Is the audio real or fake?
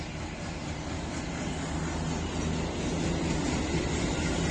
real